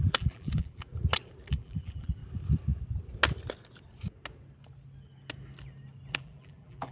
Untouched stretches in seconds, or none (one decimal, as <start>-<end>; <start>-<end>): 0.9-1.5; 2.2-6.1